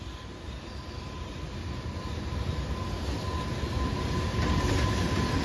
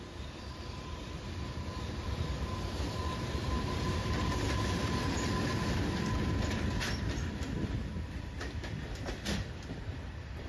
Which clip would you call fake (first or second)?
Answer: second